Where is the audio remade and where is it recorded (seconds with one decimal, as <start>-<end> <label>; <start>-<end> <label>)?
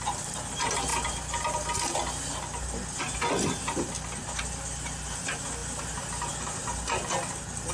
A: 0.0-7.7 recorded